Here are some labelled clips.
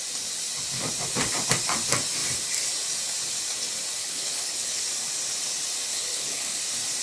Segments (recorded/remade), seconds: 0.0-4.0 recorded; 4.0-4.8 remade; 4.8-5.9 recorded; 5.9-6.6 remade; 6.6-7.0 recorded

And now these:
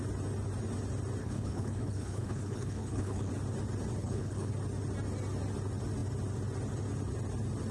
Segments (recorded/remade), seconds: 0.0-1.2 recorded; 1.2-3.3 remade; 3.3-4.0 recorded; 4.0-4.5 remade; 4.5-7.7 recorded

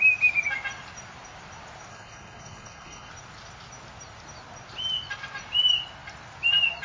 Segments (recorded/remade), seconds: 0.0-1.9 recorded; 1.9-3.1 remade; 3.1-6.8 recorded

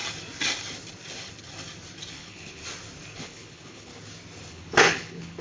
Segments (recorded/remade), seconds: 0.0-2.1 recorded; 2.1-2.6 remade; 2.6-3.2 recorded; 3.2-3.9 remade; 3.9-4.5 recorded; 4.5-5.4 remade

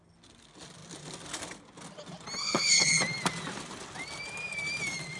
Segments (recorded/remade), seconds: 0.0-2.4 recorded; 2.4-3.0 remade; 3.0-5.2 recorded

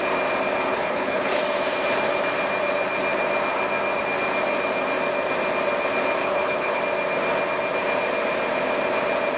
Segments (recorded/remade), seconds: 0.0-0.7 recorded; 0.7-1.4 remade; 1.4-6.2 recorded; 6.2-6.8 remade; 6.8-9.4 recorded